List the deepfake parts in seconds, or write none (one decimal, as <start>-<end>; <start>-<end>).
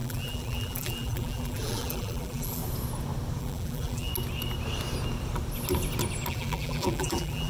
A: 0.0-2.6; 3.4-4.1; 6.3-7.5